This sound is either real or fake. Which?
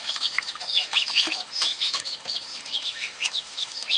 fake